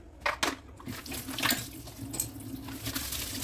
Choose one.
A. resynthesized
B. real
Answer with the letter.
B